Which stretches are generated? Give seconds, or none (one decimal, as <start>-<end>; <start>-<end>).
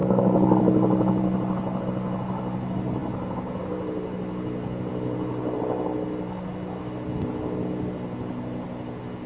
none